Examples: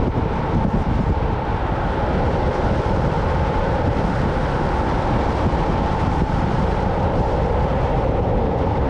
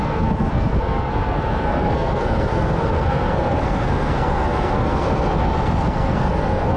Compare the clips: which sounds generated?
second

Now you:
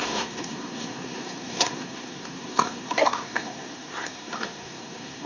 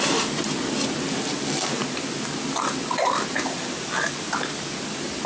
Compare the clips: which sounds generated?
first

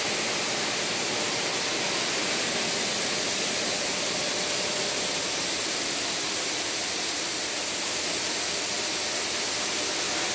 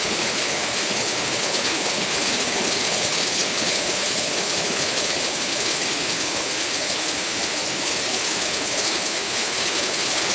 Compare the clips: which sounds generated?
second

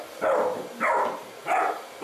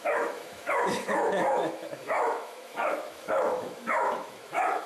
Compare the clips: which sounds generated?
second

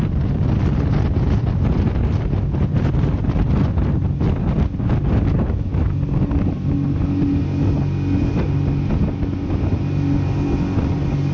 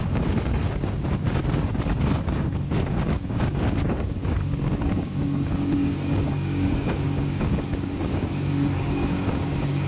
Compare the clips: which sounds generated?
second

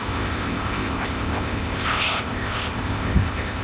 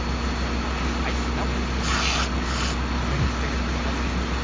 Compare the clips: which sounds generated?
first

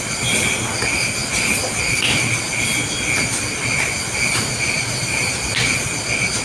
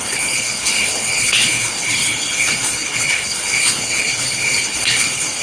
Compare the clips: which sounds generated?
second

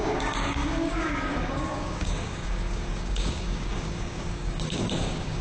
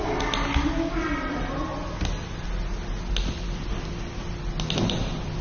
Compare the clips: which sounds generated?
first